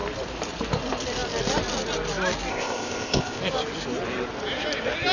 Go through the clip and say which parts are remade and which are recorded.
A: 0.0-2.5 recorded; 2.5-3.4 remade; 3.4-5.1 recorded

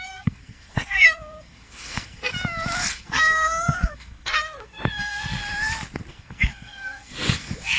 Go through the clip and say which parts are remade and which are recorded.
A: 0.0-2.3 remade; 2.3-2.9 recorded; 2.9-5.4 remade; 5.4-6.1 recorded; 6.1-7.8 remade

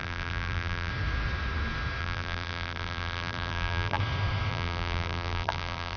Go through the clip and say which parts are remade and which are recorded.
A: 0.0-0.9 remade; 0.9-2.0 recorded; 2.0-4.0 remade; 4.0-4.5 recorded; 4.5-6.0 remade

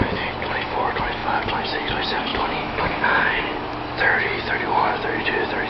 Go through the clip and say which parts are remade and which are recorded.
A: 0.0-1.2 recorded; 1.2-1.9 remade; 1.9-2.3 recorded; 2.3-2.8 remade; 2.8-5.7 recorded

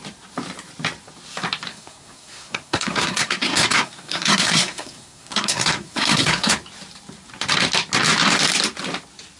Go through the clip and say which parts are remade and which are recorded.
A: 0.0-1.7 recorded; 1.7-6.6 remade; 6.6-9.4 recorded

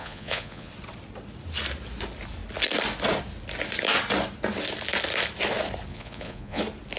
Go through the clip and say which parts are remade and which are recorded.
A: 0.0-0.7 remade; 0.7-5.9 recorded; 5.9-6.6 remade; 6.6-7.0 recorded